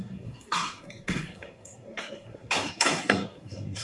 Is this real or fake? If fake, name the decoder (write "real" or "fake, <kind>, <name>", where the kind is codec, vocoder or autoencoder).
fake, codec, SNAC